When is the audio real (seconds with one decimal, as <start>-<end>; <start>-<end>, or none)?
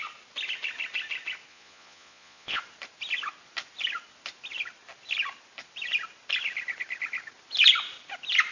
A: 0.0-1.5; 2.6-8.5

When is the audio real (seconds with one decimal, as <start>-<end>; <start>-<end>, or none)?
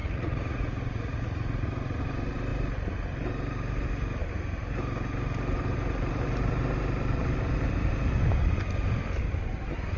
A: 2.0-10.0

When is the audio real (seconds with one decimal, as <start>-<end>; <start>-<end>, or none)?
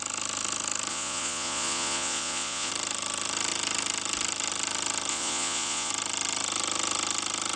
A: 0.0-0.9; 2.7-5.1; 5.9-7.6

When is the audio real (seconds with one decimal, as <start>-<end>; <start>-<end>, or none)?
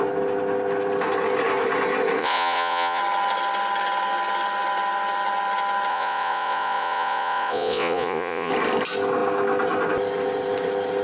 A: 0.0-2.2; 3.0-5.9; 8.5-11.0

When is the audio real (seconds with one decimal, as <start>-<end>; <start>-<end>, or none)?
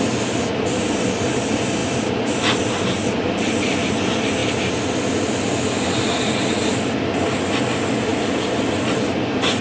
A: 0.0-9.6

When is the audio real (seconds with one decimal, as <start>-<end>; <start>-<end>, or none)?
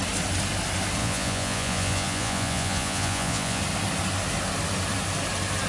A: 0.0-1.0; 3.6-5.7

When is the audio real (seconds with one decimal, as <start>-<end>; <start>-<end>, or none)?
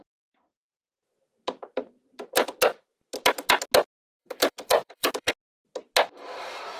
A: 0.0-4.2; 5.3-6.8